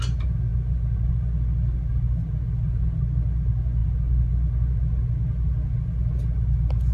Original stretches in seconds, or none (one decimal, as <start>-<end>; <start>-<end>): 0.0-6.9

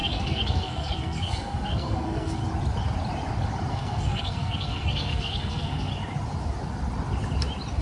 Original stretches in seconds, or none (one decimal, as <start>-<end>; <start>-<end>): 2.4-3.7; 5.9-7.8

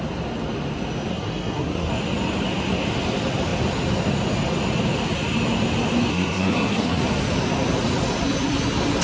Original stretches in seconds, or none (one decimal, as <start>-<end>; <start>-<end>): 0.0-1.1; 1.9-6.1; 7.0-9.0

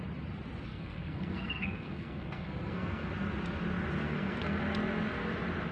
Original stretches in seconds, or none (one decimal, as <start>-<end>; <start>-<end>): 0.0-0.7; 3.1-4.0; 4.6-5.7

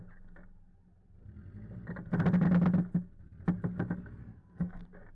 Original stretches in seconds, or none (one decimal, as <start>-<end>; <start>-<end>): 0.0-4.2; 4.8-5.2

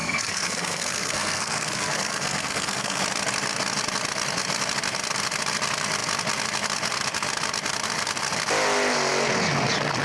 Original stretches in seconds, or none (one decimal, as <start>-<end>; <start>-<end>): 3.0-10.0

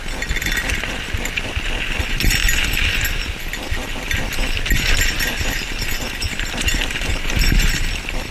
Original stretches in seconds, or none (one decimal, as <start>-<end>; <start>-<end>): 0.0-8.3

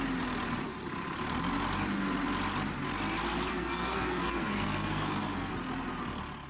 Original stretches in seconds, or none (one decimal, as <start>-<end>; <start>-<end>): 0.0-3.5; 5.5-6.5